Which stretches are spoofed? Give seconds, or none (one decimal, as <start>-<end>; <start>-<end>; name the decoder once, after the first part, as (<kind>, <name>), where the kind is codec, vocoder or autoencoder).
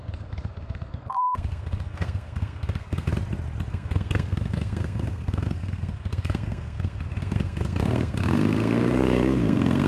0.0-3.1 (codec, SNAC); 3.7-9.9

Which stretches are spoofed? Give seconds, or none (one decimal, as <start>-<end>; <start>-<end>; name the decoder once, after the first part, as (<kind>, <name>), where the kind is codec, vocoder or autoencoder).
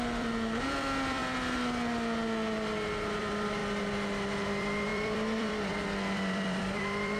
0.0-1.2 (vocoder, BigVGAN v2); 3.2-3.6; 4.5-7.2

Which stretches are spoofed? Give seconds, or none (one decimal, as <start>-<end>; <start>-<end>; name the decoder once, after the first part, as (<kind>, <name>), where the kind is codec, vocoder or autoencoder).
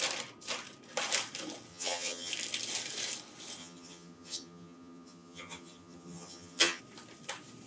1.7-2.3 (vocoder, HiFi-GAN); 3.6-6.8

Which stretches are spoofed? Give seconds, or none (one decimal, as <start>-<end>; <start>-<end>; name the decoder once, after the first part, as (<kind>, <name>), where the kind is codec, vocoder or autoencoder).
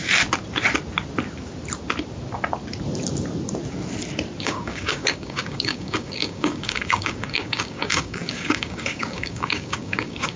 4.4-10.4 (codec, DAC)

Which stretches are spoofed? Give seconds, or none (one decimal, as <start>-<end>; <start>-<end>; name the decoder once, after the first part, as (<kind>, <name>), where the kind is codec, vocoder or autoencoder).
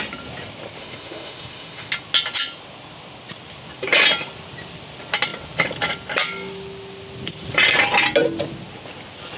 0.8-1.9 (autoencoder, DAC-VAE)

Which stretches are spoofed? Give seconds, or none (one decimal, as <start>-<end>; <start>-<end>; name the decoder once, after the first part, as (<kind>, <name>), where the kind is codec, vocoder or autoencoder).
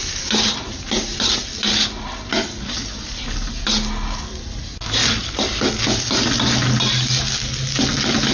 0.0-1.4 (vocoder, BigVGAN v2); 5.0-5.7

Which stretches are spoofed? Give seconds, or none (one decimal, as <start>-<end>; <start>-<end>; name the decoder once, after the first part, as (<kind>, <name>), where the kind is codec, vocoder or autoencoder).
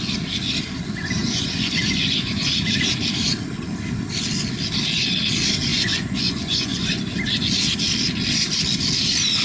1.2-2.5 (vocoder, Vocos); 5.7-7.0